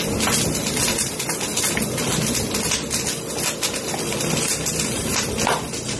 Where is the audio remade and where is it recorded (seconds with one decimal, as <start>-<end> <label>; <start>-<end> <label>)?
0.0-6.0 recorded